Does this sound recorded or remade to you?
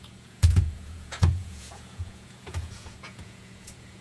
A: remade